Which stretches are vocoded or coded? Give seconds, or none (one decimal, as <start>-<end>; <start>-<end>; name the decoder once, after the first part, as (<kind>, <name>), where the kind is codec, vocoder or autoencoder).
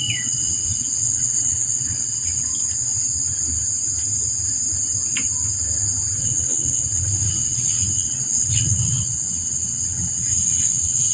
0.0-2.5 (vocoder, WaveNeXt); 6.2-11.1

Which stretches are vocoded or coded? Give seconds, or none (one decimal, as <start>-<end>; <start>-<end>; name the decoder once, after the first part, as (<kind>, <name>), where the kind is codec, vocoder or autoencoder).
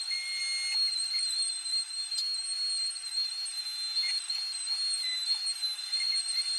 0.0-0.4 (vocoder, BigVGAN v2); 0.9-2.0; 5.8-6.6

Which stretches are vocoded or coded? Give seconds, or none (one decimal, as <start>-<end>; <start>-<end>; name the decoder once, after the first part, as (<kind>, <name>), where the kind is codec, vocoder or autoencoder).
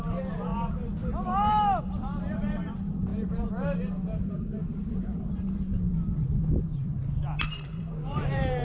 0.0-0.5 (vocoder, BigVGAN v2); 1.8-5.7; 7.4-8.6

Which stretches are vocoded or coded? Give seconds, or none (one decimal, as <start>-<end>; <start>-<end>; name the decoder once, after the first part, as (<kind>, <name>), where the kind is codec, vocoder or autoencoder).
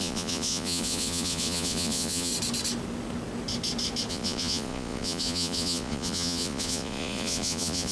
0.0-2.3 (vocoder, Vocos); 4.1-7.9